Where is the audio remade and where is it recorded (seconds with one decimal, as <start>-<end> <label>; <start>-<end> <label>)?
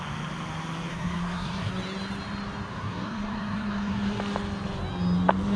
0.0-0.9 recorded; 0.9-1.7 remade; 1.7-2.7 recorded; 2.7-4.2 remade; 4.2-5.6 recorded